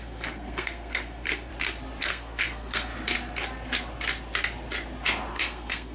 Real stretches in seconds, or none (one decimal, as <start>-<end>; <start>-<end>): 1.5-2.0; 2.9-5.3